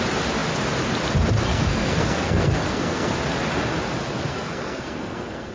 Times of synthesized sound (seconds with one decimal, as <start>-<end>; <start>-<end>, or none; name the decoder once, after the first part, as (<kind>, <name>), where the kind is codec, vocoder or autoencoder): 1.5-3.1 (codec, SNAC); 4.3-5.5